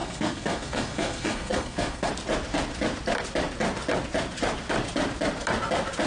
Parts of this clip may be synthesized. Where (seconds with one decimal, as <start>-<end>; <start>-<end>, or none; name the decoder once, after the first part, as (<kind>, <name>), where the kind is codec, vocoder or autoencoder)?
0.0-2.1 (codec, SNAC)